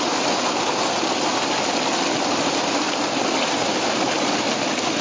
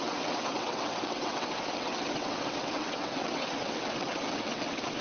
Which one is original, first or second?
first